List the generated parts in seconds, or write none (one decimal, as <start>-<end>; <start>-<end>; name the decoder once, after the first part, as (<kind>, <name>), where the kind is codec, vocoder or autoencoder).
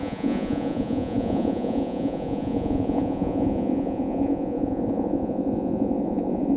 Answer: 0.0-6.6 (vocoder, Vocos)